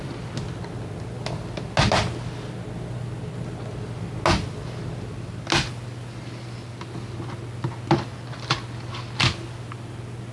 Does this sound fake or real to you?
real